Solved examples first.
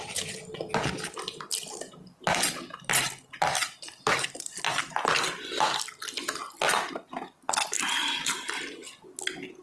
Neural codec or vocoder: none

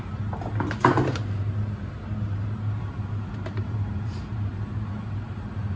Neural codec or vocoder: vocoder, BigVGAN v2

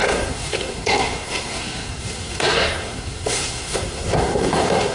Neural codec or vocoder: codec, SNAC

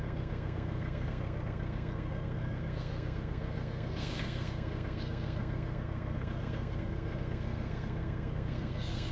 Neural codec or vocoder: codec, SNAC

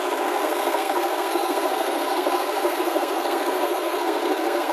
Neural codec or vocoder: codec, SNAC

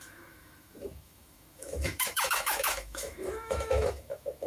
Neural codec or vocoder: autoencoder, DAC-VAE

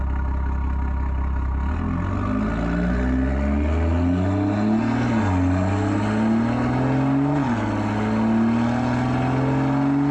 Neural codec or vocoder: none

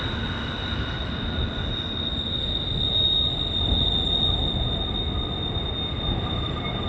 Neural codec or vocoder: none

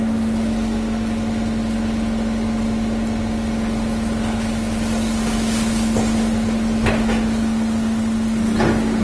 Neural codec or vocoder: none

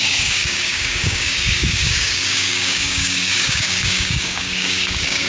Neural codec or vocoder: codec, DAC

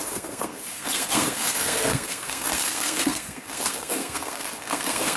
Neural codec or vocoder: codec, SNAC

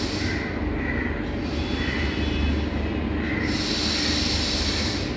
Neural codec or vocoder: none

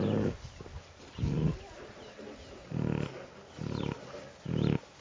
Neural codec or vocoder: none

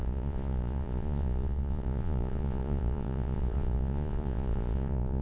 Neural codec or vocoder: vocoder, Vocos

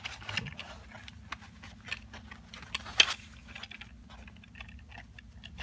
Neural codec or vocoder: none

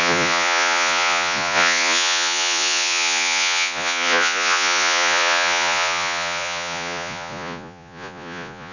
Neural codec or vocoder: vocoder, Vocos